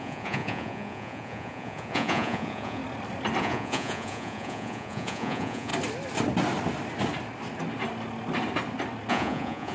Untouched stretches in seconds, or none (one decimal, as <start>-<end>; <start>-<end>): 2.8-3.4; 5.7-9.1